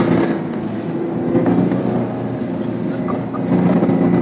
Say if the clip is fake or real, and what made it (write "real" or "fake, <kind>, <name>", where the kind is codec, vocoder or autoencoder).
real